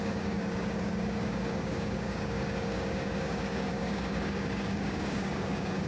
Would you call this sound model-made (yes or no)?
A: yes